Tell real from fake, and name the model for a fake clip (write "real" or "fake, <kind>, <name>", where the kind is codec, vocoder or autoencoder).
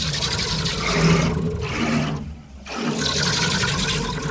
real